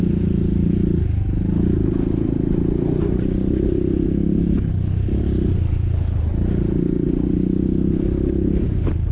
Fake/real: real